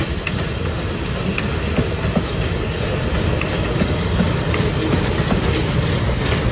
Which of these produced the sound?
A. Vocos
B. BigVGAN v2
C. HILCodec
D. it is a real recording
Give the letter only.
D